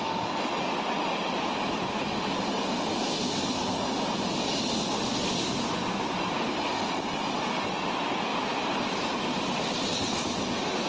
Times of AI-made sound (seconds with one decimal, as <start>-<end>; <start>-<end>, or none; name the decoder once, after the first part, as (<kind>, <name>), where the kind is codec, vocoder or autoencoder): 5.2-5.7 (vocoder, BigVGAN v2); 8.3-9.9